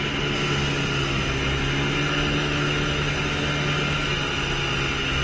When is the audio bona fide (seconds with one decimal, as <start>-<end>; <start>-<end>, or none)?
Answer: 0.0-2.4; 3.2-5.2